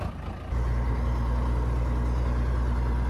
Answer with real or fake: real